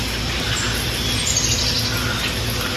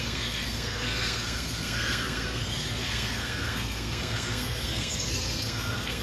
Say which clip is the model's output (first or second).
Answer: second